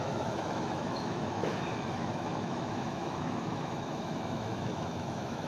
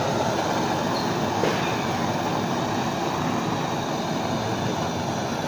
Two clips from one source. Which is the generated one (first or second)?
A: first